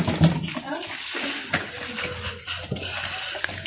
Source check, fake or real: real